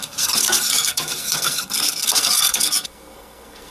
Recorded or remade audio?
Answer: remade